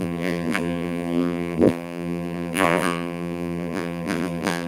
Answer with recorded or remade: remade